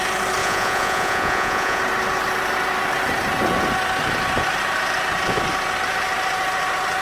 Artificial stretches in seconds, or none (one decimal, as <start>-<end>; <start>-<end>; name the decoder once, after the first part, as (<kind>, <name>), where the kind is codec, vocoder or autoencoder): 0.4-1.8 (vocoder, Vocos)